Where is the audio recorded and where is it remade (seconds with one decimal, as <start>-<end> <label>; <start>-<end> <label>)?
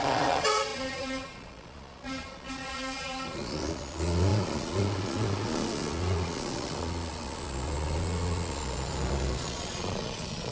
0.0-10.5 remade